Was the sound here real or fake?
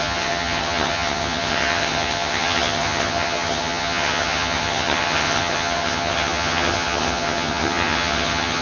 fake